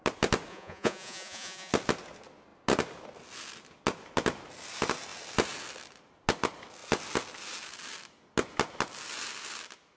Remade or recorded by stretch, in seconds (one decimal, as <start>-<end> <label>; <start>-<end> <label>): 0.0-0.5 recorded; 0.5-1.7 remade; 1.7-10.0 recorded